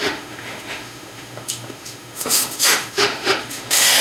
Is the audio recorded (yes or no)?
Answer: no